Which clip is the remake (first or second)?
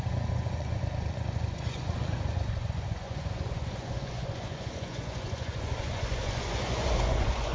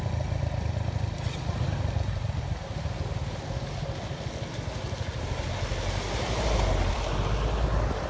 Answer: first